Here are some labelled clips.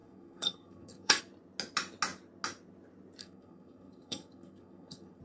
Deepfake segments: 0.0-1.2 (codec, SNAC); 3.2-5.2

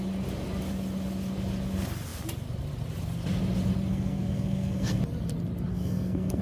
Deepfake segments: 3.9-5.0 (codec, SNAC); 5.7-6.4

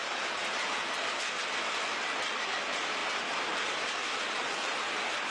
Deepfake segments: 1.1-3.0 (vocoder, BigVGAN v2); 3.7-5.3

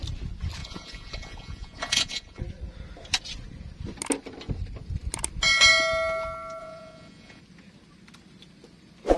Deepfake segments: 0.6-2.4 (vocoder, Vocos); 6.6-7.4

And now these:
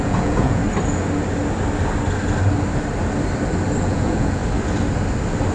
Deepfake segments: 0.0-0.6 (vocoder, Vocos); 3.8-4.4

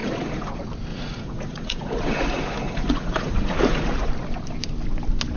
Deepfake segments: 0.0-0.5 (vocoder, Vocos); 0.9-4.1

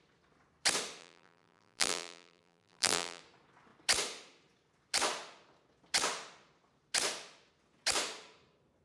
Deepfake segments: 1.0-3.2 (vocoder, BigVGAN v2)